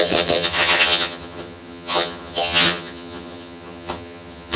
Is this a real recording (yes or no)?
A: no